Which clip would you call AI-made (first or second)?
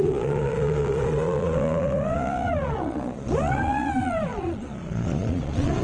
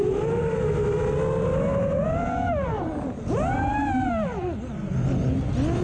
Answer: first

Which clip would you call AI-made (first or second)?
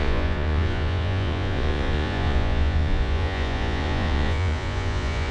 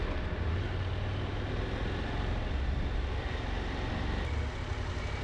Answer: first